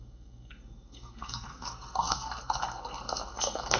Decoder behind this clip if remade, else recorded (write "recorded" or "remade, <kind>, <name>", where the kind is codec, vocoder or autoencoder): remade, codec, SNAC